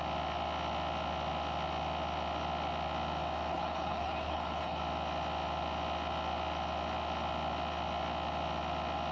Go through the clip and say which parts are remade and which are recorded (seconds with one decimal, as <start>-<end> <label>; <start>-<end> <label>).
0.0-3.5 recorded; 3.5-4.8 remade; 4.8-9.1 recorded